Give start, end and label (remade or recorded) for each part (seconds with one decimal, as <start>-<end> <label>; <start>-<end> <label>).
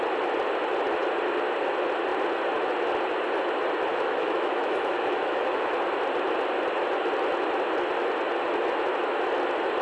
0.0-3.9 recorded; 3.9-5.7 remade; 5.7-9.8 recorded